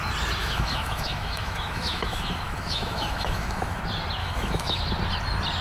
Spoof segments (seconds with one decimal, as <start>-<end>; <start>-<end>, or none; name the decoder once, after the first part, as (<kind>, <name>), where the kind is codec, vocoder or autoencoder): 0.4-3.8 (autoencoder, DAC-VAE); 4.2-4.8